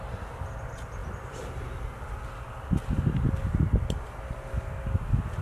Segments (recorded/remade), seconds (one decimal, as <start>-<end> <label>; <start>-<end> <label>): 0.0-5.4 recorded